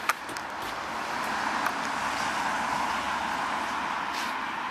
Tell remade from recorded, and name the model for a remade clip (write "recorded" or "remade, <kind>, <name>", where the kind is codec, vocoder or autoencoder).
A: recorded